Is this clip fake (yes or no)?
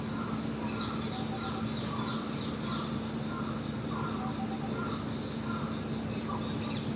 no